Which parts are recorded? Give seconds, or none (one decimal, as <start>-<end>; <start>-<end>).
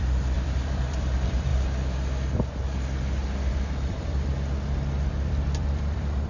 1.5-3.5; 4.3-5.1